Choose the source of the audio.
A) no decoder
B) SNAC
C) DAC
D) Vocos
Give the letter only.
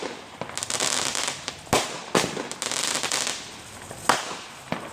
A